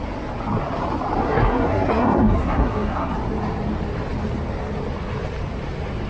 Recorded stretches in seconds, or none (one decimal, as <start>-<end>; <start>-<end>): 0.0-1.2; 3.1-6.1